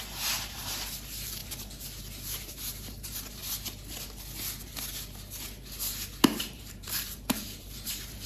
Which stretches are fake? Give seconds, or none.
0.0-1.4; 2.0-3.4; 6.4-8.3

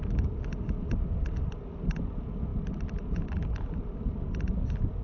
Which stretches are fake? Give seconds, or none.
none